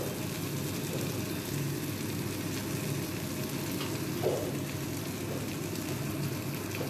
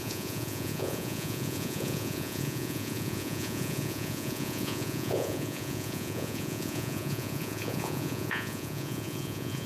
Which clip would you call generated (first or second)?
second